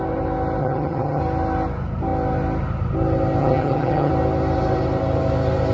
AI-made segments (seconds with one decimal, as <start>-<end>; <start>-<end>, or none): 0.6-1.2; 3.4-4.1